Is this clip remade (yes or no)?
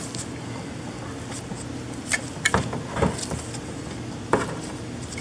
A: no